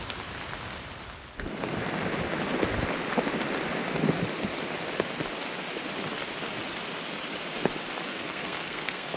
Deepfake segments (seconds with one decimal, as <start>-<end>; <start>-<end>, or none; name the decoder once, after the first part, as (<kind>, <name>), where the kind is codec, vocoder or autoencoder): 8.1-9.2 (codec, SNAC)